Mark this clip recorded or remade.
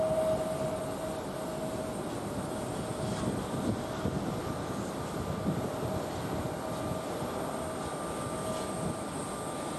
recorded